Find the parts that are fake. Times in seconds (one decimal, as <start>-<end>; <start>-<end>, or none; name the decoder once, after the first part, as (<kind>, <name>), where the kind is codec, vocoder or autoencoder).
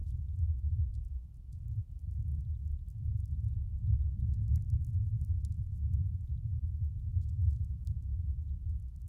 0.0-2.3 (vocoder, BigVGAN v2); 5.6-9.1